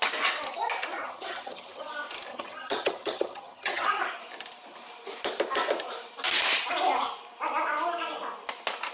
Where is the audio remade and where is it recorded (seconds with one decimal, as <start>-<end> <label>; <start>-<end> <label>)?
0.0-1.0 recorded; 1.0-1.9 remade; 1.9-2.3 recorded; 2.3-4.0 remade; 4.0-8.9 recorded